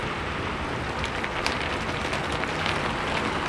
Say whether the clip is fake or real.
real